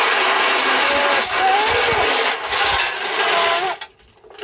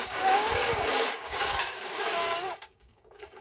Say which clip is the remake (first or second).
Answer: second